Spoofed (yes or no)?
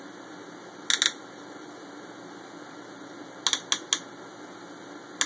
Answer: no